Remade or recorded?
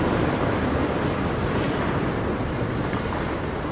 recorded